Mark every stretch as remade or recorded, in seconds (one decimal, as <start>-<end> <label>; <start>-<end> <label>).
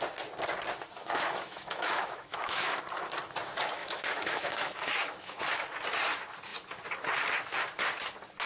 0.0-1.0 recorded; 1.0-2.8 remade; 2.8-3.8 recorded; 3.8-5.4 remade; 5.4-8.5 recorded